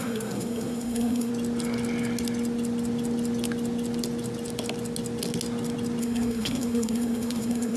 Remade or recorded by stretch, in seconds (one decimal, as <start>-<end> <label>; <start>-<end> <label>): 0.0-1.3 remade; 1.3-6.0 recorded; 6.0-7.8 remade